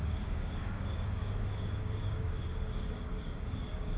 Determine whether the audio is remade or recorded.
remade